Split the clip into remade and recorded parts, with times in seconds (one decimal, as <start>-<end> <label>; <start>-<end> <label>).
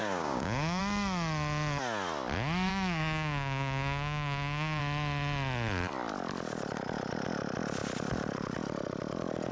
0.0-0.8 remade; 0.8-2.7 recorded; 2.7-4.8 remade; 4.8-9.5 recorded